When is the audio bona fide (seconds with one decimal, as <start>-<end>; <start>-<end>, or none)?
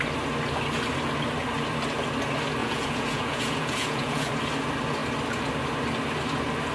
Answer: 0.0-2.6; 4.3-6.7